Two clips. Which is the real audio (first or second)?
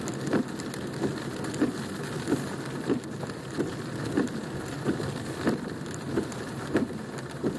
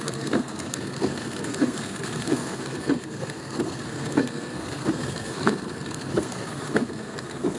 first